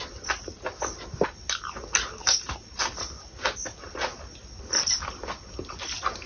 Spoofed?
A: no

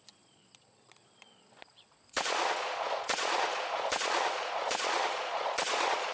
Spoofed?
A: yes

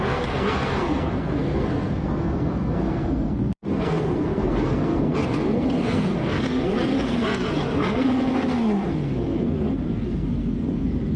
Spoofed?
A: yes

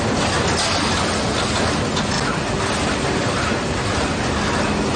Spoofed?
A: no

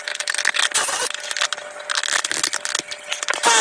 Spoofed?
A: no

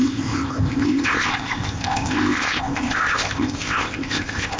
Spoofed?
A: yes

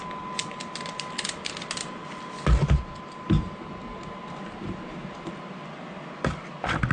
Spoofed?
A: no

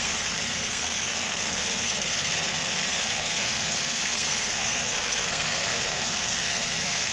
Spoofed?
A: yes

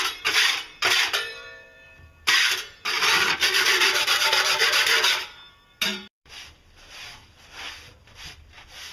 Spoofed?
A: yes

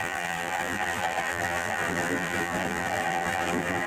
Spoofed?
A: yes